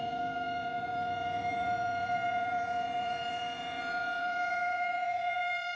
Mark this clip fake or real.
fake